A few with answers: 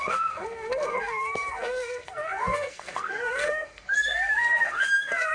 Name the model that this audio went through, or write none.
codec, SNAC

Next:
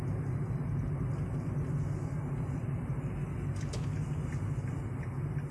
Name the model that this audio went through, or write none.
none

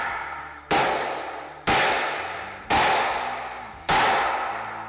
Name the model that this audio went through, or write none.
none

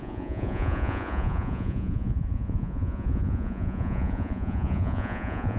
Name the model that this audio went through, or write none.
vocoder, Vocos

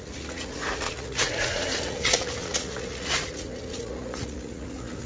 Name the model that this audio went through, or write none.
vocoder, Vocos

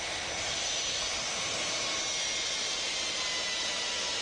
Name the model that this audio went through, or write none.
none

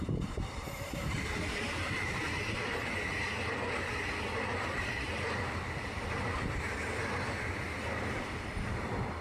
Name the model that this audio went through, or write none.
none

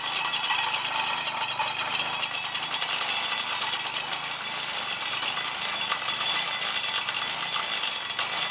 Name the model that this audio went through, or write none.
none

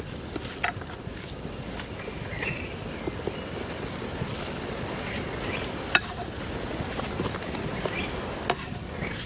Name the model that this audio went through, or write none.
none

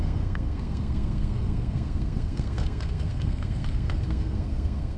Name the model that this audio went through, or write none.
codec, SNAC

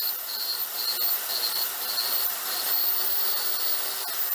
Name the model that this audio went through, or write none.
none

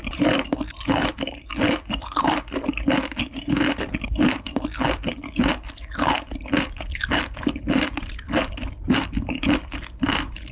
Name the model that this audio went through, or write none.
vocoder, BigVGAN v2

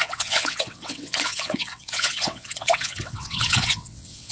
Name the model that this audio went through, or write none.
vocoder, WaveNeXt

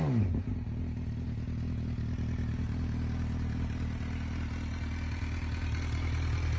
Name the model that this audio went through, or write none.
none